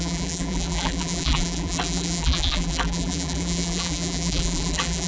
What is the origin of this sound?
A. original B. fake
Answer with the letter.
B